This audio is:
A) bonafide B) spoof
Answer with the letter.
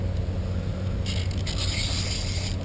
A